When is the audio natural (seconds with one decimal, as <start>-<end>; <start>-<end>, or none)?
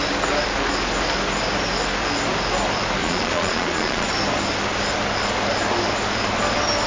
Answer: 0.0-3.0; 4.1-6.9